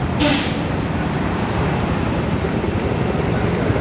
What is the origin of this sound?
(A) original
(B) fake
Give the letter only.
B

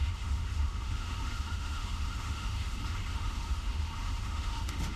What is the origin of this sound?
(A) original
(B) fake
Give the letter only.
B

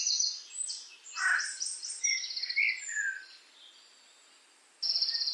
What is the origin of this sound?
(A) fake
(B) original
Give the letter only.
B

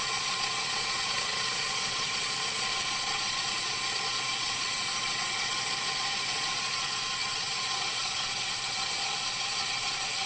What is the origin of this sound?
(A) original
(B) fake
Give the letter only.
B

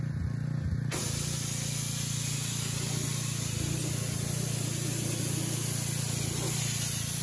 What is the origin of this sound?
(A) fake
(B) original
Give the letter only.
B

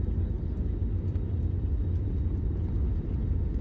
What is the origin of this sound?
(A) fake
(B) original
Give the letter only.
B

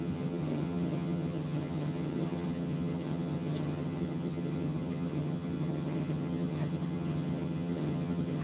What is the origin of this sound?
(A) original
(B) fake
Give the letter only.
B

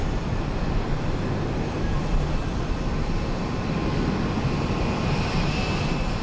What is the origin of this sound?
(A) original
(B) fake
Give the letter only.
A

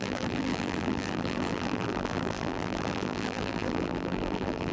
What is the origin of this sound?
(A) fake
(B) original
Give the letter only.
A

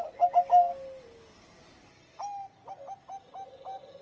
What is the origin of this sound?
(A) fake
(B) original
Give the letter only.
B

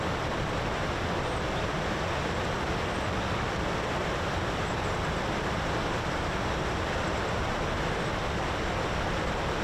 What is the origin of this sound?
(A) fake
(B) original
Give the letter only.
A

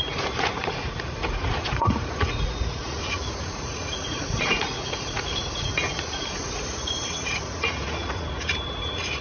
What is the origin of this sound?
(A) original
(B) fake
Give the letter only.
B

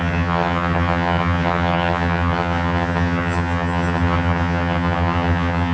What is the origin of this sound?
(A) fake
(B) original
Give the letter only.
A